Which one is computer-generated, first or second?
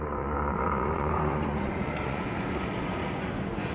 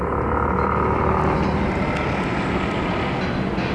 first